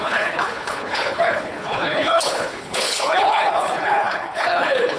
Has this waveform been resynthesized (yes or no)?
yes